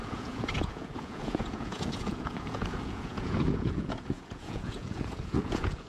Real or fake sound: fake